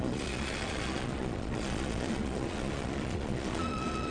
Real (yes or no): no